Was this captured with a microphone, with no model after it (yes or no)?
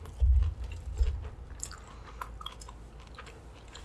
yes